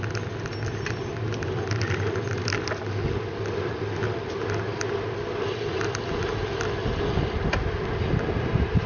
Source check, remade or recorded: recorded